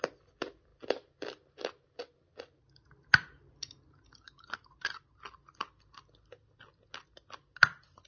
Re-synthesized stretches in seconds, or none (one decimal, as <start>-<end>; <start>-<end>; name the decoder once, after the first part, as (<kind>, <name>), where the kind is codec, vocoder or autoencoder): none